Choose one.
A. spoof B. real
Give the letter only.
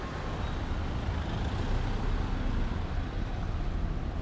B